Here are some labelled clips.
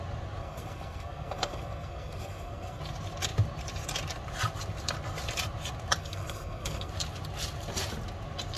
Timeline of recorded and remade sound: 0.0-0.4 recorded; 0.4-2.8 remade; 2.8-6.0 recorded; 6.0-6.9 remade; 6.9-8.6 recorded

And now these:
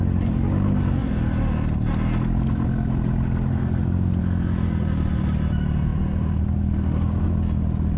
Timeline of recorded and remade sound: 0.0-8.0 recorded